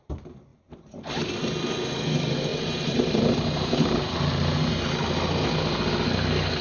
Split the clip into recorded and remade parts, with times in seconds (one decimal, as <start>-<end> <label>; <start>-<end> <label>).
0.0-0.5 recorded; 0.5-1.3 remade; 1.3-2.5 recorded; 2.5-4.7 remade; 4.7-6.6 recorded